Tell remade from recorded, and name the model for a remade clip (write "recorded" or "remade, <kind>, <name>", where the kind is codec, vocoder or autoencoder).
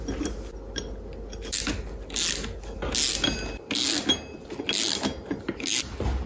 recorded